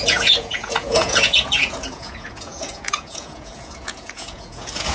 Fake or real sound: fake